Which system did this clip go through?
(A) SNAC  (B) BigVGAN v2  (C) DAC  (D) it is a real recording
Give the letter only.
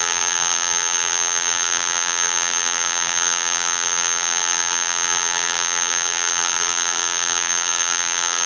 B